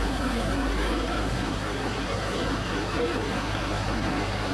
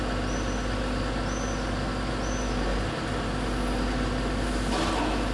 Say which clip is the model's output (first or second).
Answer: first